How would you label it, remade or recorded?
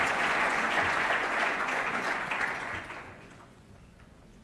remade